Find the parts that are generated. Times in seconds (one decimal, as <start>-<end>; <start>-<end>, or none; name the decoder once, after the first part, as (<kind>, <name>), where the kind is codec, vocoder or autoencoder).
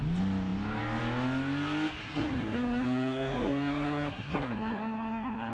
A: 2.0-5.5 (codec, SNAC)